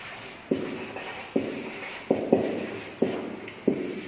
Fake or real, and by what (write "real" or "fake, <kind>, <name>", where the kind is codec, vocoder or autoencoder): real